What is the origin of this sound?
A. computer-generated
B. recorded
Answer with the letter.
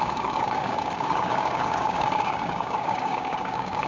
A